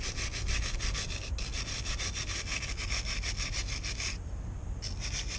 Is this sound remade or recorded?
recorded